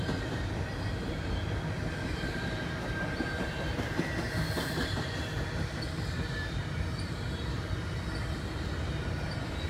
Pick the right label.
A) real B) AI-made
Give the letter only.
B